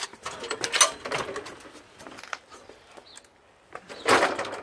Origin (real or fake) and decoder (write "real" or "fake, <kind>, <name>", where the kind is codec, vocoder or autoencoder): real